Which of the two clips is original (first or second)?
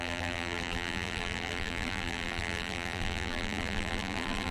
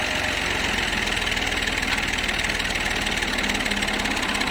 second